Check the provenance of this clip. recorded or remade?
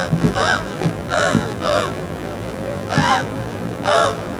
remade